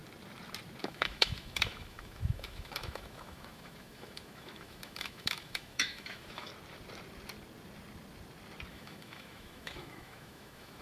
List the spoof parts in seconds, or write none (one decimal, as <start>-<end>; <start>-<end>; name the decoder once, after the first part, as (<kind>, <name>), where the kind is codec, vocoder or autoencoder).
0.8-6.5 (autoencoder, DAC-VAE); 8.7-10.8